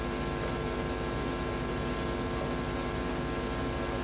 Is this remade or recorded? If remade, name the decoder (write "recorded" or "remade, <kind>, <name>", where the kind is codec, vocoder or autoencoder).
recorded